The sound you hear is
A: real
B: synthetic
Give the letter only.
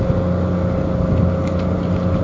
A